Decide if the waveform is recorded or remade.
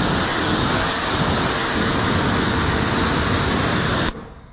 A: recorded